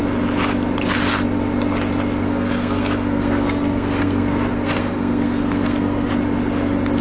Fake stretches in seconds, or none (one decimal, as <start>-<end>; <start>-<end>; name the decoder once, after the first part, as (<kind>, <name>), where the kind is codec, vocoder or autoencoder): 2.2-6.1 (codec, SNAC)